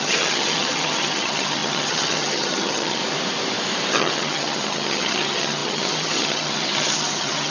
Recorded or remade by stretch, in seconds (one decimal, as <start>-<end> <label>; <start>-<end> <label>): 0.0-3.0 remade; 3.0-3.9 recorded; 3.9-7.5 remade